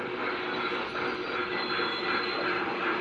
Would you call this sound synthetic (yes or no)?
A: no